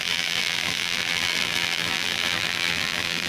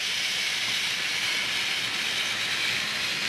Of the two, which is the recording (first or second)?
second